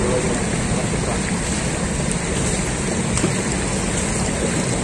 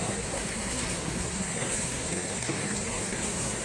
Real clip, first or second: first